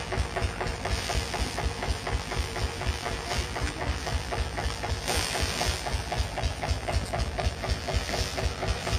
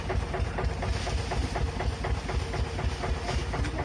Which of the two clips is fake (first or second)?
first